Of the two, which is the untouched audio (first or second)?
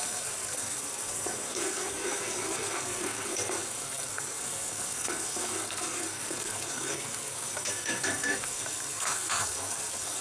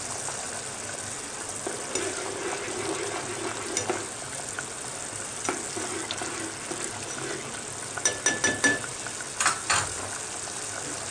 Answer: second